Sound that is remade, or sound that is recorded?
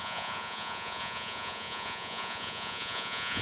remade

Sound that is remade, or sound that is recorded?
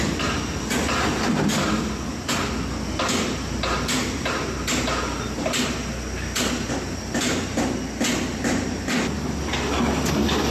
recorded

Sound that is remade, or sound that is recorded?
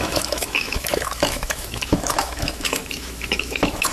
remade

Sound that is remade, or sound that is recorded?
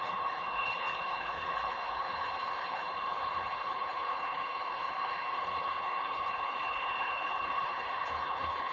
remade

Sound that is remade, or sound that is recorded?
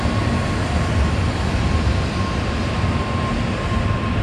recorded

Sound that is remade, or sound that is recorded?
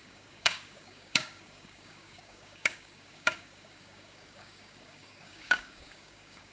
remade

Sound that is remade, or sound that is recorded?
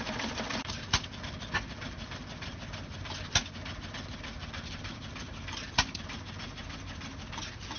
recorded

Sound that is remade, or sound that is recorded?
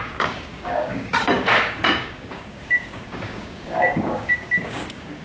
remade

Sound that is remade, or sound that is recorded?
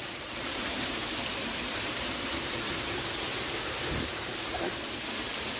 remade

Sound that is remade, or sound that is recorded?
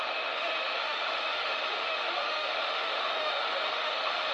remade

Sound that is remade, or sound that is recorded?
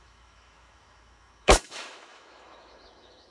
remade